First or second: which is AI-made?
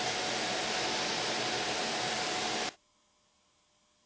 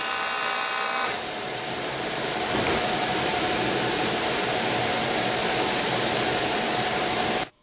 second